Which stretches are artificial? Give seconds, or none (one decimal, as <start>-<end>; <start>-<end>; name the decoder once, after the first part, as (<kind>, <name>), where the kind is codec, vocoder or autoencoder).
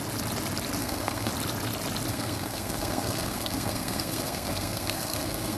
0.8-1.3 (codec, SNAC); 2.1-5.6